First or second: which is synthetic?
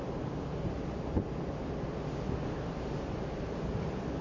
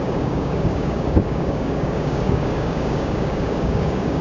second